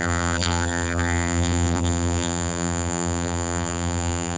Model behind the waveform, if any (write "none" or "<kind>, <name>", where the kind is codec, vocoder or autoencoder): vocoder, BigVGAN v2